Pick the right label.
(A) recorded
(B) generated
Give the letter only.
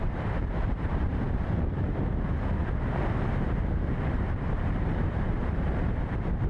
B